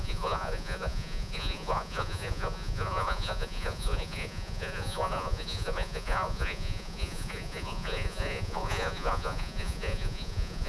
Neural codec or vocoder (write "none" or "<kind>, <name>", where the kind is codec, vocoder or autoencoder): vocoder, Vocos